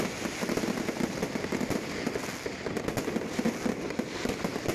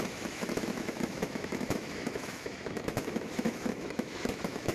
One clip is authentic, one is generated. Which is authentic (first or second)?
first